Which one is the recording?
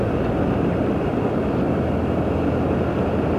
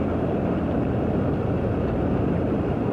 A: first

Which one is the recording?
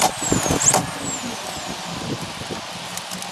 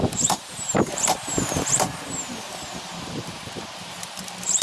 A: first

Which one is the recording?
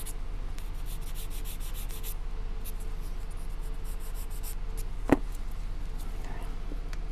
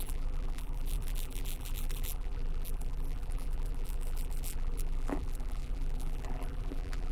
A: first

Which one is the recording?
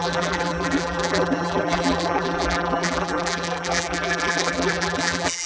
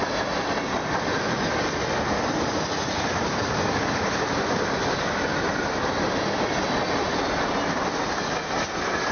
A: second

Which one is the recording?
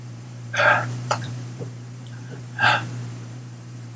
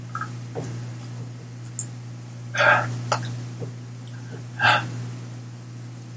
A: second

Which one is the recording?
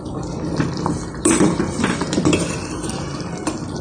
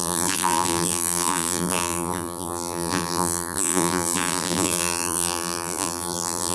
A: first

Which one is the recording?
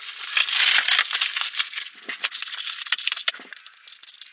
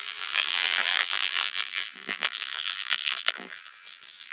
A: first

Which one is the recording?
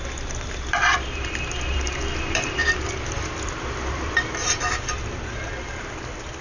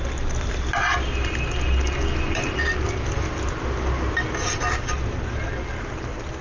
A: second